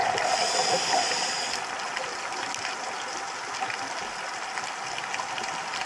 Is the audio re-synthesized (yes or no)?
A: no